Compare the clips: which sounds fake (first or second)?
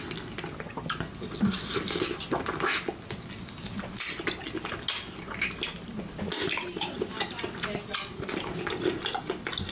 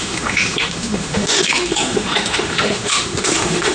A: second